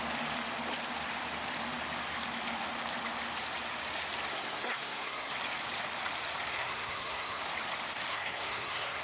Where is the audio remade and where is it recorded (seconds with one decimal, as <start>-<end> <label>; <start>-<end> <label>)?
0.0-4.3 recorded; 4.3-5.3 remade; 5.3-6.5 recorded; 6.5-7.4 remade; 7.4-8.1 recorded; 8.1-9.0 remade